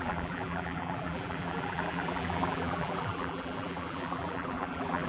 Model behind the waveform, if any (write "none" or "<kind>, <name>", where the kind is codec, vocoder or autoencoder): vocoder, BigVGAN v2